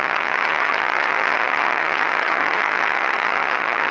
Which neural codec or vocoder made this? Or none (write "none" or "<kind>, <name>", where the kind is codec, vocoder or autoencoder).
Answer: vocoder, HiFi-GAN